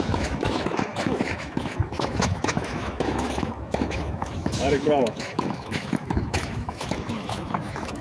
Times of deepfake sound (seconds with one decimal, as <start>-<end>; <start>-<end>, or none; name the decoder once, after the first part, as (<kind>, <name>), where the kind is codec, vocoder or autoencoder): 0.0-8.0 (autoencoder, DAC-VAE)